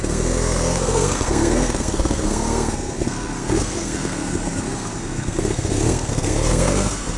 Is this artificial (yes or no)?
yes